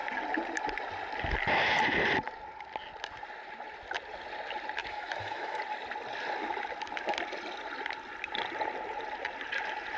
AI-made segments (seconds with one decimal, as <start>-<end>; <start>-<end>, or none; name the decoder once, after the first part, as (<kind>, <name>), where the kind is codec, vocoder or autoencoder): 4.8-5.6 (autoencoder, DAC-VAE)